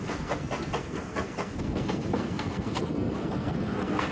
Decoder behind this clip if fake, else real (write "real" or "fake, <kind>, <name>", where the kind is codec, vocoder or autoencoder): fake, codec, SNAC